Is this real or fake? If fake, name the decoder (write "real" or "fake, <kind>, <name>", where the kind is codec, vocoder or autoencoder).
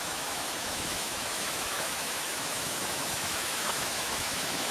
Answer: fake, autoencoder, DAC-VAE